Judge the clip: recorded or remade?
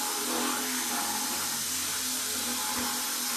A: recorded